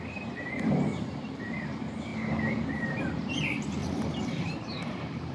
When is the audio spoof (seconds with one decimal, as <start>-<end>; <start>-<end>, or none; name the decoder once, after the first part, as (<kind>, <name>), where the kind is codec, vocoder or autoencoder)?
0.0-0.9 (vocoder, BigVGAN v2); 1.4-2.1; 2.9-5.3